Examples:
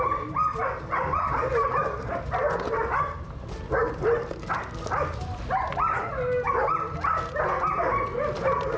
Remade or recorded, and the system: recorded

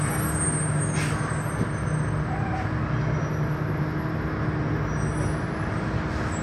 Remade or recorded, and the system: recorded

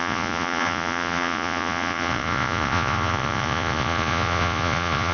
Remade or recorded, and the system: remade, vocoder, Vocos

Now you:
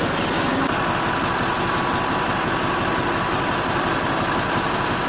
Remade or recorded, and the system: recorded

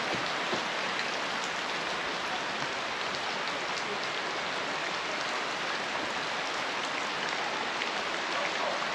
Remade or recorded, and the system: recorded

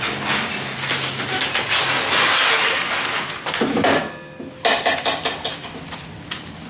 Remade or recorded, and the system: recorded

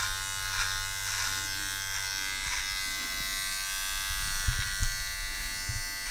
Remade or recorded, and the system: recorded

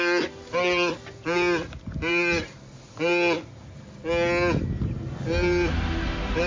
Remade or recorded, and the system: recorded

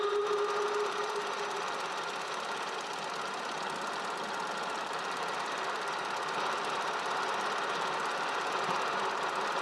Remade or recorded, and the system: recorded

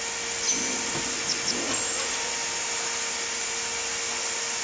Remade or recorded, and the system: recorded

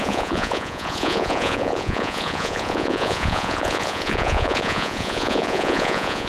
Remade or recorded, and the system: remade, vocoder, Vocos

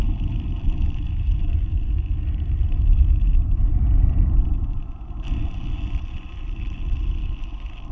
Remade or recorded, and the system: recorded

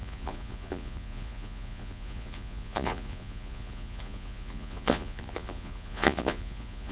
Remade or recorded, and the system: remade, vocoder, Vocos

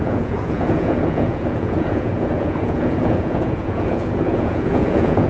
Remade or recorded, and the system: remade, vocoder, Vocos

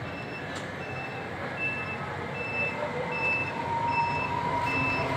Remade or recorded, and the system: recorded